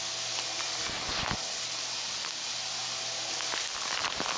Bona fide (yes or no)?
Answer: yes